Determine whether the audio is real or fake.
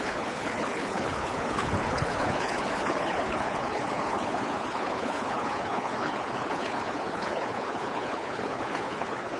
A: fake